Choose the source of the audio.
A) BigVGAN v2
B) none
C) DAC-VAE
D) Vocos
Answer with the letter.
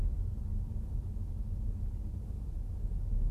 B